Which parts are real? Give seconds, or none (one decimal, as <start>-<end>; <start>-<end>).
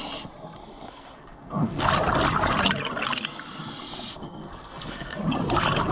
0.0-0.6; 1.9-4.1; 5.2-5.9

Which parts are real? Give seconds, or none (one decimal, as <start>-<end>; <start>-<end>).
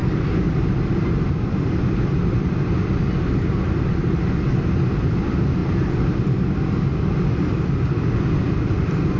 0.0-9.2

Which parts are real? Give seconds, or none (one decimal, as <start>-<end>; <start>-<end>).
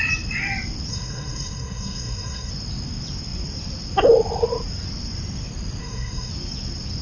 0.0-0.9; 2.5-5.8; 6.3-7.0